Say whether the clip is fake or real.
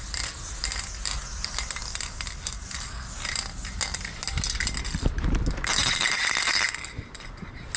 real